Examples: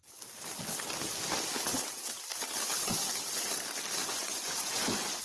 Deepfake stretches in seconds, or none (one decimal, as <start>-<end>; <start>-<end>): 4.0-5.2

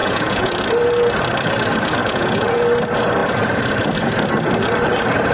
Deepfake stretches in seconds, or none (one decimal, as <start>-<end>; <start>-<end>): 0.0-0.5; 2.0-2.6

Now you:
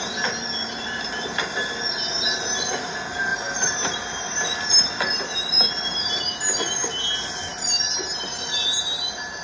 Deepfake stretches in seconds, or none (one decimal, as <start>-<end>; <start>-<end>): none

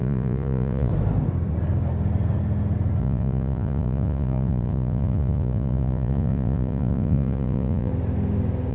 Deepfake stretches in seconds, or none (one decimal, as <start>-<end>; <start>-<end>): 0.0-0.9; 3.0-7.9

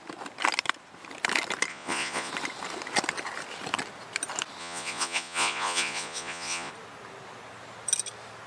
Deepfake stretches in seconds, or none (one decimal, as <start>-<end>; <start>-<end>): 1.7-2.3; 4.6-6.7

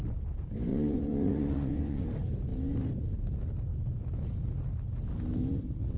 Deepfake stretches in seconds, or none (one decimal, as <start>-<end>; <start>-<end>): 0.7-2.0